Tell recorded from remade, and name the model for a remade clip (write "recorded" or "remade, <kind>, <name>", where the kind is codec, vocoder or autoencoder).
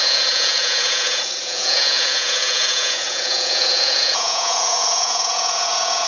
remade, vocoder, Vocos